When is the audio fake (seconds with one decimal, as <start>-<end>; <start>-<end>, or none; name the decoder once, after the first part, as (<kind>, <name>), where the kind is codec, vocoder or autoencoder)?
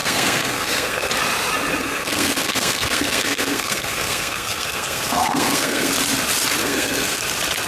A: 0.0-1.1 (codec, SNAC); 1.8-5.9; 6.6-7.2